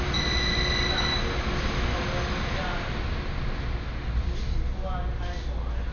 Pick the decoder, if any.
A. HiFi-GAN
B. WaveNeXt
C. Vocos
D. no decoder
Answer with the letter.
D